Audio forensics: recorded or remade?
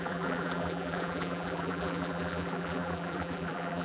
remade